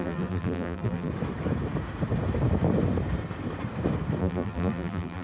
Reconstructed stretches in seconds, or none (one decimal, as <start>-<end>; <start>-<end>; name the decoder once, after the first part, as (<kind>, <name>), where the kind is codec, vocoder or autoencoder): 0.0-1.1 (vocoder, BigVGAN v2); 4.2-5.2